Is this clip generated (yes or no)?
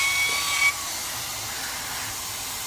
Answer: no